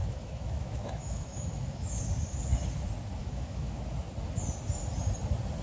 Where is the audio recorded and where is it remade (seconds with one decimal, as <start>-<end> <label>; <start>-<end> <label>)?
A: 0.0-2.0 remade; 2.0-3.2 recorded; 3.2-3.8 remade; 3.8-5.6 recorded